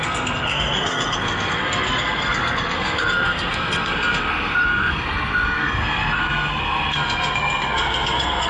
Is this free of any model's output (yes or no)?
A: no